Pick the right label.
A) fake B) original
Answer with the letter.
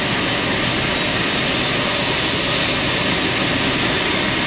B